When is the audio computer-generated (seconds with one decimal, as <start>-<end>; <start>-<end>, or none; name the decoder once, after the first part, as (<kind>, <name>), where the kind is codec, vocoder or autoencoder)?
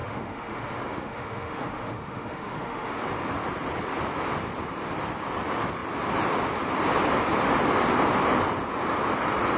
0.0-3.0 (autoencoder, DAC-VAE)